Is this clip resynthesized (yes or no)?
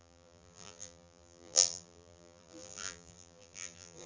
yes